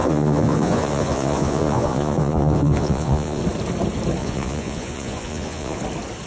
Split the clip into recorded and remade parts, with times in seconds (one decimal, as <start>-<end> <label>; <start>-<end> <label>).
0.0-3.4 remade; 3.4-4.2 recorded; 4.2-5.8 remade; 5.8-6.3 recorded